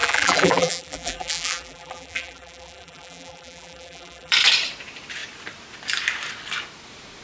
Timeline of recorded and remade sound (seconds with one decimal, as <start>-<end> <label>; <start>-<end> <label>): 0.0-4.3 remade; 4.3-7.2 recorded